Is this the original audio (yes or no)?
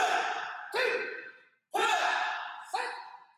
yes